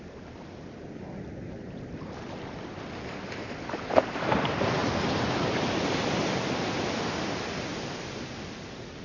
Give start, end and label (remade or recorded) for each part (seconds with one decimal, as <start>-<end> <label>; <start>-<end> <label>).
0.0-9.0 recorded